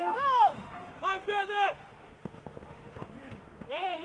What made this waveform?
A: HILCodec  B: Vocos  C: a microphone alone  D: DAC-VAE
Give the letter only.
D